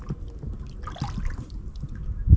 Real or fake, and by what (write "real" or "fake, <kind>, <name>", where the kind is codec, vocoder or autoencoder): real